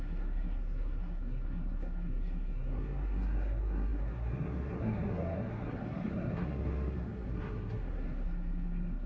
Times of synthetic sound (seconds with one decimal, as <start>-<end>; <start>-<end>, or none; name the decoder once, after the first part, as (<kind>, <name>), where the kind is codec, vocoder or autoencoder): 0.0-9.1 (codec, SNAC)